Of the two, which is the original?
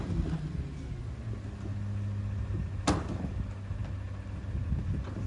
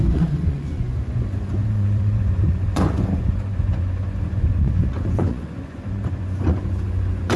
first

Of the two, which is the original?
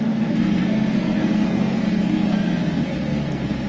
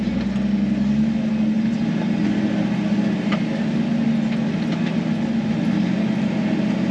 second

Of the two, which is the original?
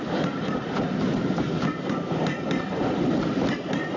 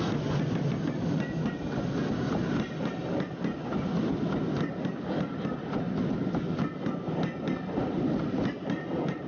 second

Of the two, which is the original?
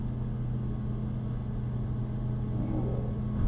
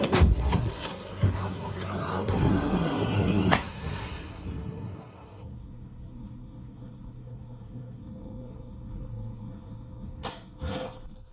first